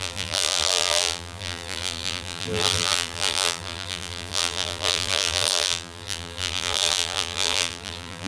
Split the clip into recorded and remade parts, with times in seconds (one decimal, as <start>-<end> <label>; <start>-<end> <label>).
0.0-8.3 remade